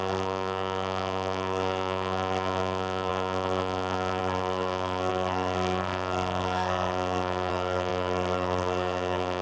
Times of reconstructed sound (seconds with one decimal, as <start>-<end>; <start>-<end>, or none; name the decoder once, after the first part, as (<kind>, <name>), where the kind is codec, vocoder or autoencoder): 0.0-9.4 (codec, SNAC)